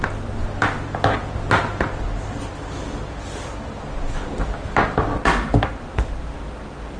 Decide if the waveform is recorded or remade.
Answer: recorded